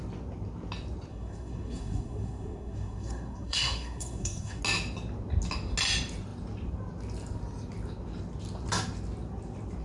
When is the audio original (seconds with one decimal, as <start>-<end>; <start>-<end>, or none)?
0.0-1.1; 4.6-9.8

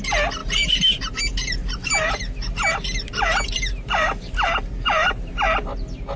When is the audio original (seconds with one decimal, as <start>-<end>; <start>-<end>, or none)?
0.0-0.4; 1.2-1.6; 5.3-6.2

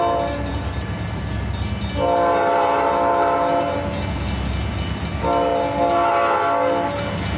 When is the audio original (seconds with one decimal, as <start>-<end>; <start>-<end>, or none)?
0.0-7.4

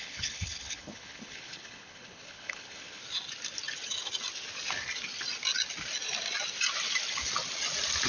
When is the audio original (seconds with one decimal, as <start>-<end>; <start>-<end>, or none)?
3.0-8.1

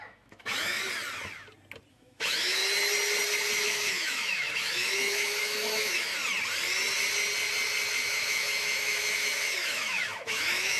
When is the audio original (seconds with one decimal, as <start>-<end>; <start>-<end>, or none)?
0.8-1.9; 2.6-3.6; 6.1-8.1